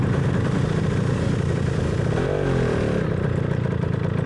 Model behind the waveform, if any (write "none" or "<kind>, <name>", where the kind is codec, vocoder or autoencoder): none